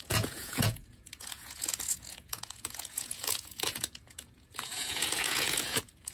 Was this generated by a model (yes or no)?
yes